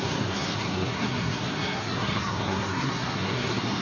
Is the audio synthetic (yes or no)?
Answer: yes